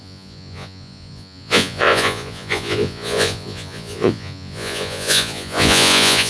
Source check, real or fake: fake